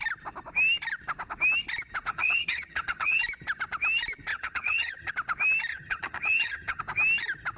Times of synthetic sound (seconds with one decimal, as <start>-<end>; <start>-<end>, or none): 2.1-3.2; 4.3-5.1; 5.7-6.8